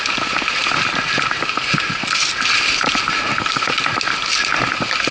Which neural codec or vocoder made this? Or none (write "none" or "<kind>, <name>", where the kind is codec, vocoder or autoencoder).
none